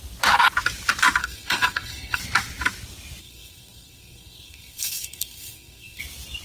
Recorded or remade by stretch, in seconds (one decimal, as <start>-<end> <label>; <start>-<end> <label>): 0.0-1.2 recorded; 1.2-2.2 remade; 2.2-3.2 recorded; 3.2-6.0 remade; 6.0-6.4 recorded